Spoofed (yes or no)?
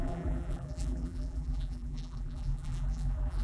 yes